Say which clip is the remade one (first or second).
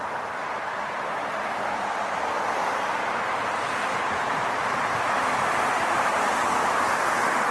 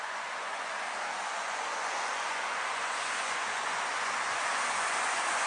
second